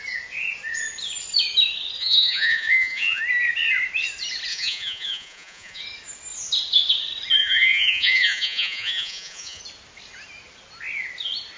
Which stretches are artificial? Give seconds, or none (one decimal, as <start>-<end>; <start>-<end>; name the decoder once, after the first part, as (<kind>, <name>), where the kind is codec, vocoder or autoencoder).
2.0-3.2 (vocoder, Vocos); 4.5-5.8; 7.4-9.6